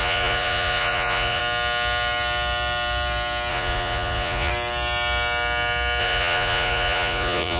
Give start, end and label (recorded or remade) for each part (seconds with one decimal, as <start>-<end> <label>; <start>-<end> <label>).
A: 0.0-1.4 remade; 1.4-3.5 recorded; 3.5-4.5 remade; 4.5-6.0 recorded; 6.0-7.6 remade